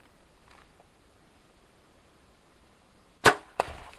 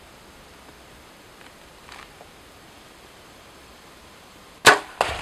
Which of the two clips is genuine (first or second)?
second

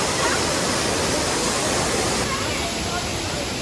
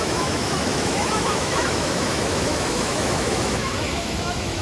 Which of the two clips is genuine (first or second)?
first